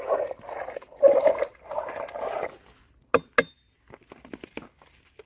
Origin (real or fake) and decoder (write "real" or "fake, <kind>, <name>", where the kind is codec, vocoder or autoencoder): real